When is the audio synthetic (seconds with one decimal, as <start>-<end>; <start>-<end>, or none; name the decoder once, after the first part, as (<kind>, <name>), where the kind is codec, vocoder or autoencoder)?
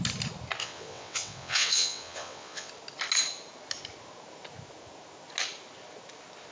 0.6-2.7 (vocoder, WaveNeXt)